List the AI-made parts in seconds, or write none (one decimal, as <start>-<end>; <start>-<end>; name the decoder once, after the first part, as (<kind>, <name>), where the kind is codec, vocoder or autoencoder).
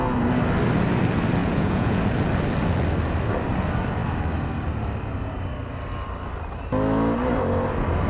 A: 1.4-2.0 (vocoder, Vocos)